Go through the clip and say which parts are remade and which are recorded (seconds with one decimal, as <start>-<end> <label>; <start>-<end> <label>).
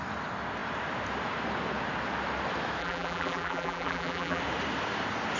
0.0-2.8 recorded; 2.8-4.4 remade; 4.4-5.4 recorded